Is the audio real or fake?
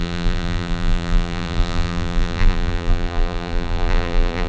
fake